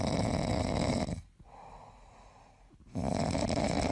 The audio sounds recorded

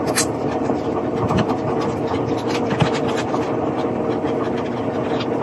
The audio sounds recorded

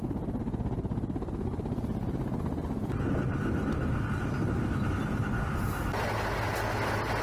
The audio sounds recorded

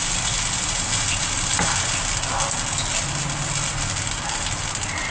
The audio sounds recorded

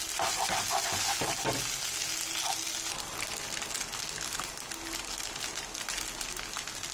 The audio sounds recorded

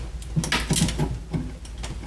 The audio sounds recorded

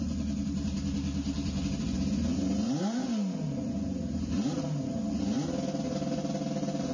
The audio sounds recorded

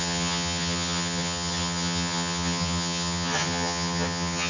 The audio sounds remade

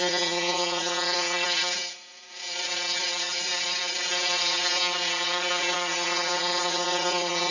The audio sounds remade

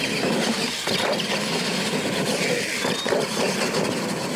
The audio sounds recorded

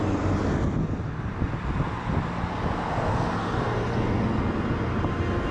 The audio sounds recorded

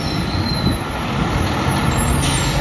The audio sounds recorded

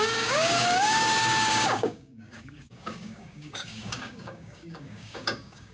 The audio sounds remade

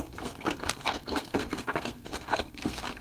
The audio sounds remade